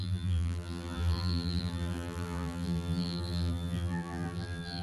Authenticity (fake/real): fake